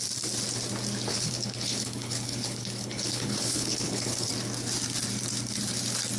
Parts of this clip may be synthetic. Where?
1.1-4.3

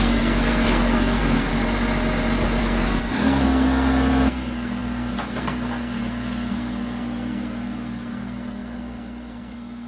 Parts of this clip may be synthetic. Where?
0.0-1.5; 2.6-9.9